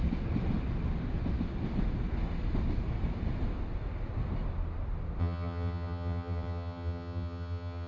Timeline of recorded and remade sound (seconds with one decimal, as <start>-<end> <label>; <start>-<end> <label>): 0.0-5.2 recorded; 5.2-7.9 remade